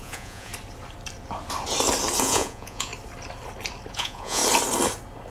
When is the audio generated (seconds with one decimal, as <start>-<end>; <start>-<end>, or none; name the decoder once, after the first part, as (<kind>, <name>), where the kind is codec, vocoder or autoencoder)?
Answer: 0.0-0.5 (vocoder, Vocos); 2.2-2.9; 3.9-4.4